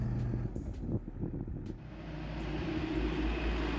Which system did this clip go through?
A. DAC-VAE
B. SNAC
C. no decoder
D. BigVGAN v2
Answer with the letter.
C